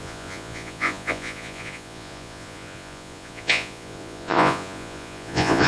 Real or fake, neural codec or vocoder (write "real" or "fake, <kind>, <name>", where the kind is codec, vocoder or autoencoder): fake, vocoder, Vocos